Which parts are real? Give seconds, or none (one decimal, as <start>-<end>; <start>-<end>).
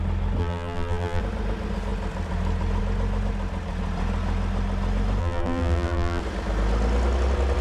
0.0-0.4; 1.2-5.2; 6.2-7.6